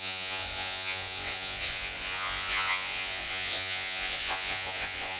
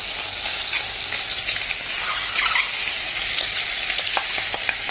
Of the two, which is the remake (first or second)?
first